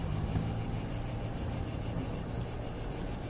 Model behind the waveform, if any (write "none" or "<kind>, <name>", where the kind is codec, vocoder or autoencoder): none